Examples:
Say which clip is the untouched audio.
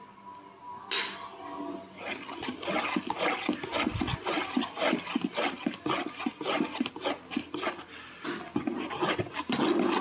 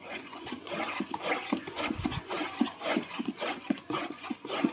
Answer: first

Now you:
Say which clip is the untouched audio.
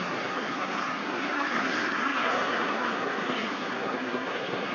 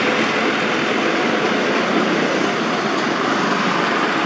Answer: second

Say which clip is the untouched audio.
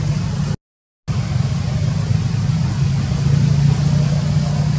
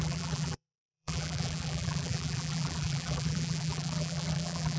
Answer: first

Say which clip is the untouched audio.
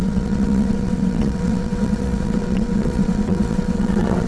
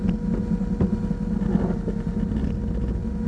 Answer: second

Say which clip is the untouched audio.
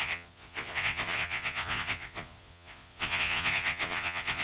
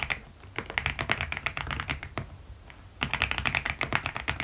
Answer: second